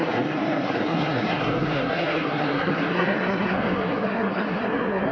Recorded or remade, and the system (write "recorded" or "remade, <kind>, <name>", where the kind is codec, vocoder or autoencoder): remade, codec, SNAC